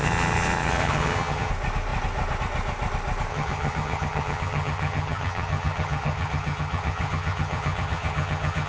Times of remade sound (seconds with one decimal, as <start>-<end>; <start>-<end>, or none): 0.0-1.5; 3.3-8.7